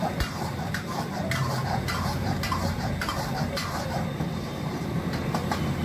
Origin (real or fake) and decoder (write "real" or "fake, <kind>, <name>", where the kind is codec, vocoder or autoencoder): fake, vocoder, BigVGAN v2